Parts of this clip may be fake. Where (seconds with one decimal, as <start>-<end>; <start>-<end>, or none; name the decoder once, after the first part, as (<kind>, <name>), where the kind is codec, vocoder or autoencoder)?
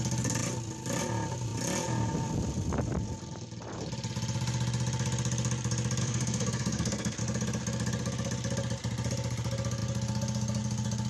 6.0-7.2 (codec, SNAC)